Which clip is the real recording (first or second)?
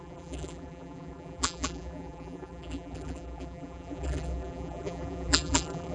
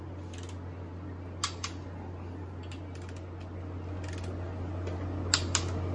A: second